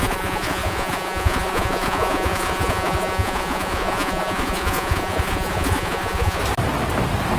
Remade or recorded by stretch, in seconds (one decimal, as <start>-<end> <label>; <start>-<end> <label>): 0.0-6.4 remade; 6.4-7.4 recorded

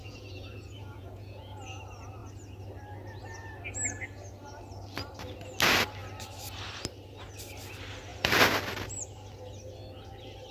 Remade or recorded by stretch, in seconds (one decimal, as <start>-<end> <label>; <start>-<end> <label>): 0.0-1.6 remade; 1.6-10.5 recorded